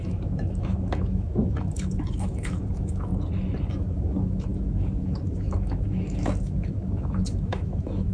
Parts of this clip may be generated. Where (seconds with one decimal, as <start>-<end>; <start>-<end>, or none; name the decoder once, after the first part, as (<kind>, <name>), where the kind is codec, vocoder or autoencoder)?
0.0-3.1 (autoencoder, DAC-VAE); 3.7-8.1